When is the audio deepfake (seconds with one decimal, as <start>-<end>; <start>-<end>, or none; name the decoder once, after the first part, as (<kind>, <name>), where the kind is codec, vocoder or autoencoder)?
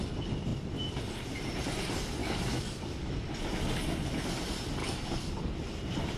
2.2-3.1 (codec, DAC); 4.8-5.3